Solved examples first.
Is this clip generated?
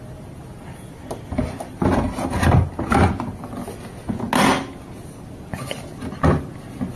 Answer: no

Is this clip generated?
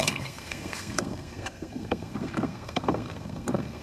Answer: yes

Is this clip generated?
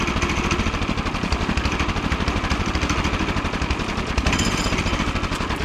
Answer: no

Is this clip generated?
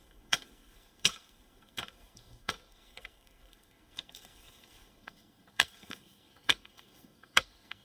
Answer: yes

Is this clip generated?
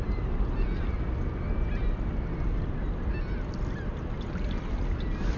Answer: no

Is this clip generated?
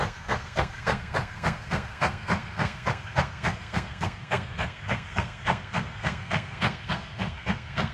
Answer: yes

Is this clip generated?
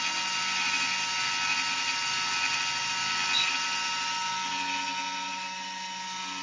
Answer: no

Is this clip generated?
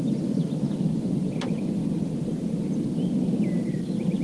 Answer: no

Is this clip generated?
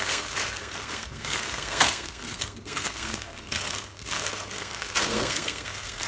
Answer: yes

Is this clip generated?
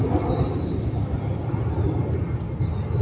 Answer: no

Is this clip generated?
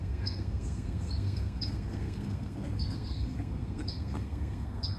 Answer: yes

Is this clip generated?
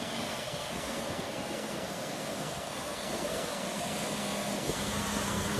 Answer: yes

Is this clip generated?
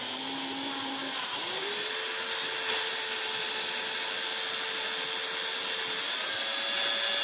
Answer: no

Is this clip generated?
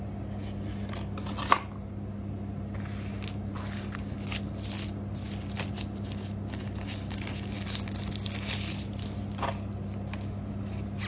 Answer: no